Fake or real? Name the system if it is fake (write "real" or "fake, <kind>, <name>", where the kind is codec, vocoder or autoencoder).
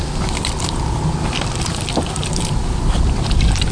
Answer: real